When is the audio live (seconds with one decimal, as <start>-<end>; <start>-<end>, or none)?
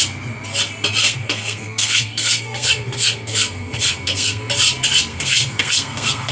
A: 0.0-1.0; 4.5-5.1